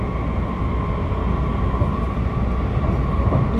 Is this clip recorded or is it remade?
recorded